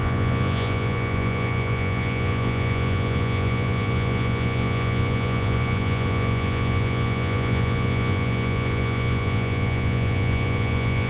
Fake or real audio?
fake